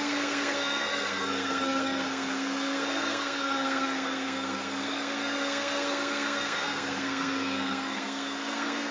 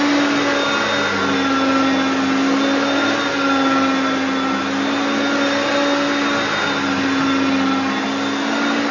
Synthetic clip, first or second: first